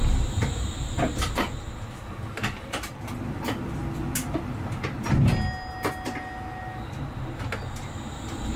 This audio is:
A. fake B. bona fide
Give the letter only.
B